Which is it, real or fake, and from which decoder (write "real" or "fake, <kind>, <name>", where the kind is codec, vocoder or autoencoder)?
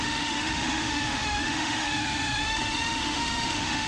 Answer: fake, autoencoder, DAC-VAE